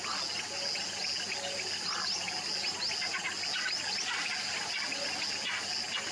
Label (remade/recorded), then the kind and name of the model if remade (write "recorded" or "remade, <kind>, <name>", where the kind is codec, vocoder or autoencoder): recorded